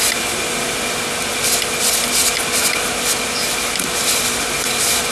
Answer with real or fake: real